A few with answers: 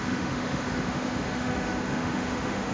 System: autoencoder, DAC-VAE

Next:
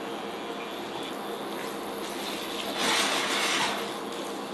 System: none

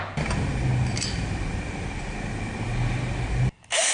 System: none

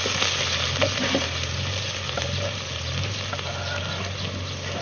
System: none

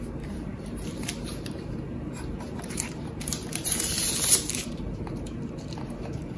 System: vocoder, BigVGAN v2